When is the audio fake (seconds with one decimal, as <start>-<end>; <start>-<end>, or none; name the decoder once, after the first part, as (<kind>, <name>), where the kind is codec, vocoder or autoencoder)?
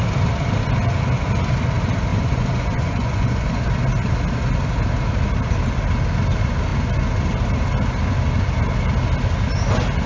2.1-3.7 (vocoder, Vocos)